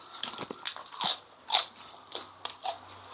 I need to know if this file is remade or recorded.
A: recorded